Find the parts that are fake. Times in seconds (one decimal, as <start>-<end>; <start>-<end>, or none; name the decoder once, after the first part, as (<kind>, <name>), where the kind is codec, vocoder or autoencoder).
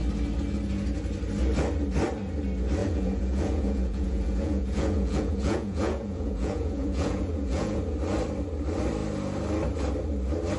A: 2.8-7.8 (vocoder, Vocos)